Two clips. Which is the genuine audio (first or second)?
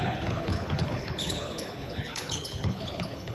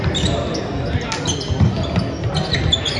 second